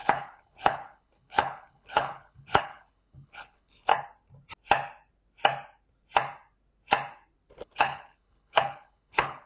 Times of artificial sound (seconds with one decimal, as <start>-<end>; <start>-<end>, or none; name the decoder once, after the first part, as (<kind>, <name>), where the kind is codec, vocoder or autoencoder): 0.0-3.9 (codec, HILCodec); 7.5-9.5